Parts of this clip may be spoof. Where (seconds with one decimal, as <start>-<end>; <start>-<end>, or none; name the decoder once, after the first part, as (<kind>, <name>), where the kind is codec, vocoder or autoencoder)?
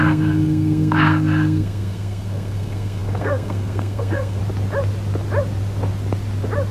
0.0-4.4 (codec, SNAC)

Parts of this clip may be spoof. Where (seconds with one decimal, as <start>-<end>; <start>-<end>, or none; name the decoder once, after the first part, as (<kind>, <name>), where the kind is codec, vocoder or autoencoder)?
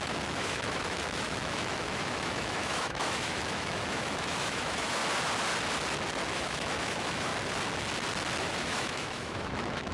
0.0-5.0 (autoencoder, DAC-VAE); 6.3-7.3; 8.4-9.9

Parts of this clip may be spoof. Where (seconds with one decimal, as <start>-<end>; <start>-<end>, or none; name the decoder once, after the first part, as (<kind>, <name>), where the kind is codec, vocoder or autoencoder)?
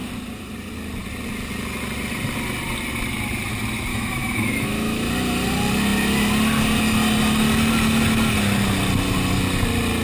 3.9-5.1 (autoencoder, DAC-VAE)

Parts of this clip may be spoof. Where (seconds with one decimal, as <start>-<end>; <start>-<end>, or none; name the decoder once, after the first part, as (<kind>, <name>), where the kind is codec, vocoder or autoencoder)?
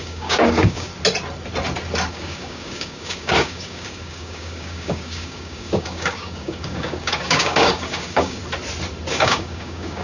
0.0-0.9 (codec, DAC); 2.1-8.4; 9.1-10.0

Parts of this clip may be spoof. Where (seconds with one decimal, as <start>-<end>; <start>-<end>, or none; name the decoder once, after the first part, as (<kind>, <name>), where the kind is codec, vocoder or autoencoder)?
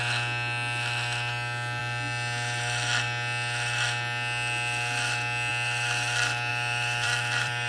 6.5-7.7 (vocoder, BigVGAN v2)